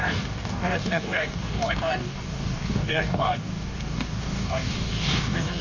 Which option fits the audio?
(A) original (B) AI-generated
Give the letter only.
B